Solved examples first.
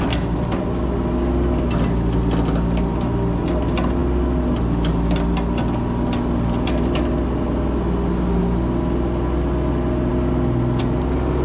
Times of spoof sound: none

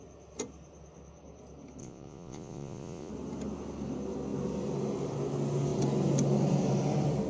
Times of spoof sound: 1.8-3.1 (vocoder, Vocos)